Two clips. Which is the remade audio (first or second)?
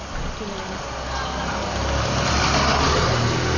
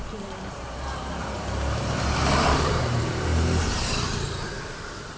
second